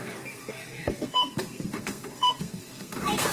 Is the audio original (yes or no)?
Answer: no